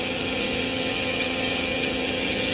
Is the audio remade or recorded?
remade